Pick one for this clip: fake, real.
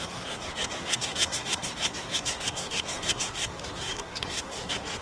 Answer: fake